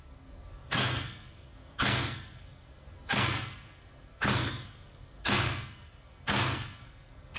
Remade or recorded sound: remade